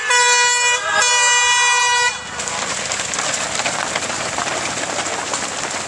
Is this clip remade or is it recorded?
recorded